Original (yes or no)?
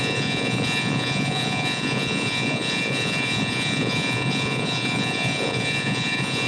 no